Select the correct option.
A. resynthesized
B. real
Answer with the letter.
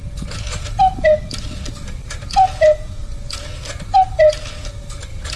B